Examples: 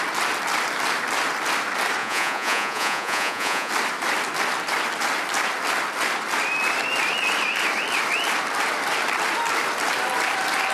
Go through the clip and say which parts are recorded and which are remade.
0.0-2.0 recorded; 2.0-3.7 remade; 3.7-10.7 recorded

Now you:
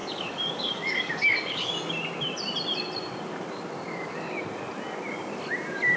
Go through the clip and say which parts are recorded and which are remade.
0.0-1.7 remade; 1.7-6.0 recorded

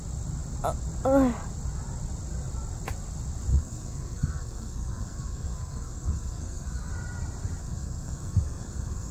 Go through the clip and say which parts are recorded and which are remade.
0.0-3.5 recorded; 3.5-6.9 remade; 6.9-7.6 recorded; 7.6-9.1 remade

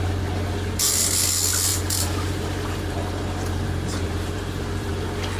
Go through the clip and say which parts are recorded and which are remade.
0.0-1.7 recorded; 1.7-4.9 remade; 4.9-5.4 recorded

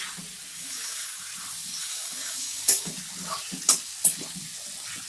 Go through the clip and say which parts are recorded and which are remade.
0.0-0.5 recorded; 0.5-1.2 remade; 1.2-1.8 recorded; 1.8-2.9 remade; 2.9-5.1 recorded

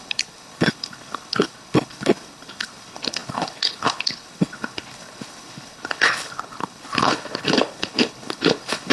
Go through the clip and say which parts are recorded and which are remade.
0.0-8.9 remade

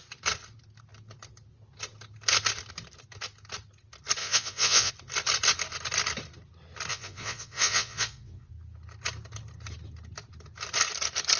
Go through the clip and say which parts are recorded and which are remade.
0.0-4.2 recorded; 4.2-4.9 remade; 4.9-6.9 recorded; 6.9-8.5 remade; 8.5-11.4 recorded

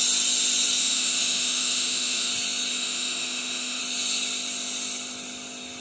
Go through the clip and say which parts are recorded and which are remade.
0.0-0.8 recorded; 0.8-2.3 remade; 2.3-2.7 recorded; 2.7-3.8 remade; 3.8-5.8 recorded